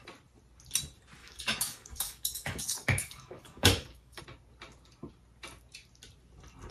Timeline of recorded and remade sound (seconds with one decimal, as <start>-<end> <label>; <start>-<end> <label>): 0.0-1.2 recorded; 1.2-4.2 remade; 4.2-6.7 recorded